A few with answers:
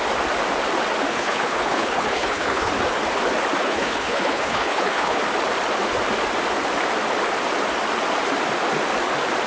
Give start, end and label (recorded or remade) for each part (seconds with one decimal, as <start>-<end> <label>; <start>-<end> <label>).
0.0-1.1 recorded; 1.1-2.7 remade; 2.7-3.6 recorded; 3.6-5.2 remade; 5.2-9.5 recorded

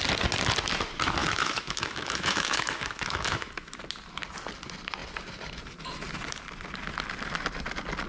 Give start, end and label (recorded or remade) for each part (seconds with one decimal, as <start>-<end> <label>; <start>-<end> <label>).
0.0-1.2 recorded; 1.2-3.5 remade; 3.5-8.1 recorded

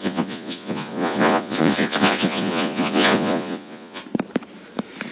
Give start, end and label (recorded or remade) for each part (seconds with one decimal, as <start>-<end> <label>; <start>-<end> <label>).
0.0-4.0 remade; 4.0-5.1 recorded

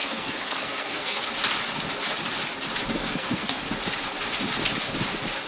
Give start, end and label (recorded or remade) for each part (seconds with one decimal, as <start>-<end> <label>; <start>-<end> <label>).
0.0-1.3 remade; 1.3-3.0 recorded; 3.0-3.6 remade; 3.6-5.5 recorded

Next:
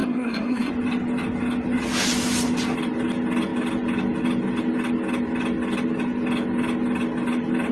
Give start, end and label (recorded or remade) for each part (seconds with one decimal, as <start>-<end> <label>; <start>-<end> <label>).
0.0-0.7 remade; 0.7-7.7 recorded

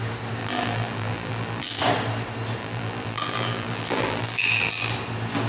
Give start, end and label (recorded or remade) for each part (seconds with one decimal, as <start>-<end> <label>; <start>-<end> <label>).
0.0-0.4 recorded; 0.4-1.8 remade; 1.8-2.6 recorded; 2.6-4.9 remade; 4.9-5.5 recorded

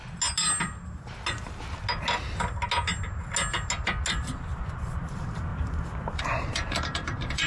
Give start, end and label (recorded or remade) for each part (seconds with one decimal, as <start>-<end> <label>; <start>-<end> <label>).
0.0-4.1 recorded; 4.1-7.5 remade